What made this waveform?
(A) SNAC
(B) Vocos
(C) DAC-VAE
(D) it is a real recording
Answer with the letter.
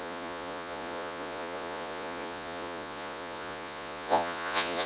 B